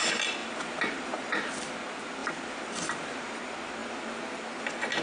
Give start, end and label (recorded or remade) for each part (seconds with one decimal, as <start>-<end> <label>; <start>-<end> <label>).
0.0-0.4 recorded; 0.4-1.5 remade; 1.5-2.2 recorded; 2.2-3.4 remade; 3.4-5.0 recorded